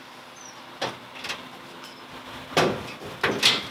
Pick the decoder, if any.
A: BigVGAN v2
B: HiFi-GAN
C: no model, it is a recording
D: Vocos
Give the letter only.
C